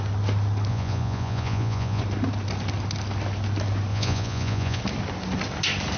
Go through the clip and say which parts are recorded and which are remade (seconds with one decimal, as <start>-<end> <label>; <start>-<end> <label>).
0.0-0.7 recorded; 0.7-2.0 remade; 2.0-3.9 recorded; 3.9-4.8 remade; 4.8-6.0 recorded